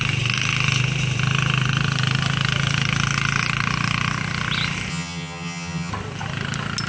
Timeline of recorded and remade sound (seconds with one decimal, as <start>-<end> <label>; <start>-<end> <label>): 0.0-4.9 recorded; 4.9-5.9 remade; 5.9-6.9 recorded